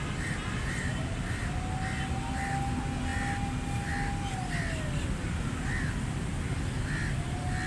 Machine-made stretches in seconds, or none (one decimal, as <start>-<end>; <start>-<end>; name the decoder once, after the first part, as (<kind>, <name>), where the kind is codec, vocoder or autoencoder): none